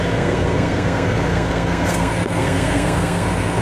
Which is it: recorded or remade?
remade